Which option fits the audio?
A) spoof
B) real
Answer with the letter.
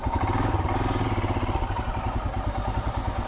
B